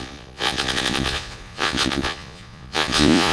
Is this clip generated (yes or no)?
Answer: yes